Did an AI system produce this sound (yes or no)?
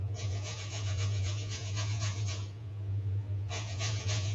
yes